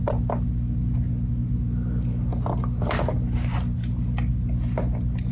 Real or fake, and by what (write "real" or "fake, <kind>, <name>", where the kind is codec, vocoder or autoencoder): real